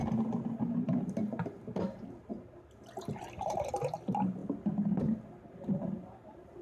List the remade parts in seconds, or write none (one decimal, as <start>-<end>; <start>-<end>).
0.6-4.4; 5.0-6.6